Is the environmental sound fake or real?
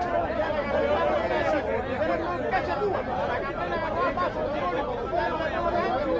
real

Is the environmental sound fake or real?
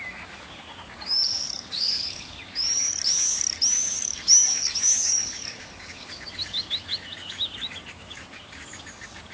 fake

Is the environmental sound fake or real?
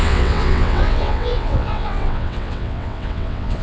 fake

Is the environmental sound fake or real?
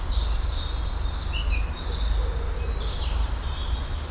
real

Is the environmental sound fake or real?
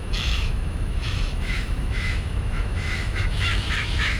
fake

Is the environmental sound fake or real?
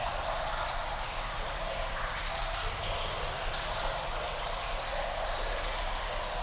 real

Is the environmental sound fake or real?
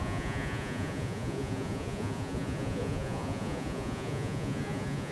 fake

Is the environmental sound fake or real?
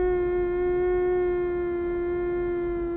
real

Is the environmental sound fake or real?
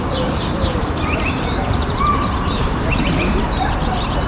fake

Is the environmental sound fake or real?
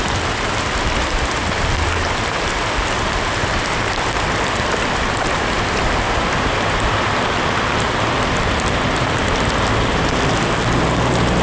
fake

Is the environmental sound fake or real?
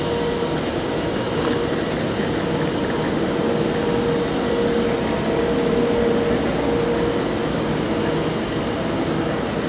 real